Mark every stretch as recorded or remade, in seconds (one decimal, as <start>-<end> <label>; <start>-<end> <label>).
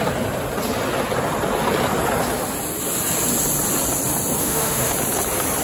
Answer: 0.0-4.4 recorded; 4.4-4.9 remade; 4.9-5.6 recorded